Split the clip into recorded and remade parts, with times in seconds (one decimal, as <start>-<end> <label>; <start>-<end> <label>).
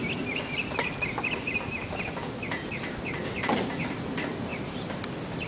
0.0-4.5 recorded; 4.5-5.0 remade; 5.0-5.5 recorded